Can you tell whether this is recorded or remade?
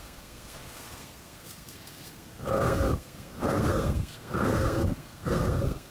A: remade